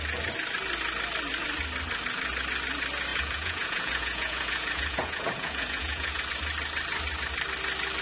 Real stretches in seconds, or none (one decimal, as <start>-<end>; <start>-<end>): 0.0-3.1; 6.2-8.0